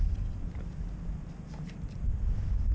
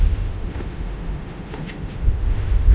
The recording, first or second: first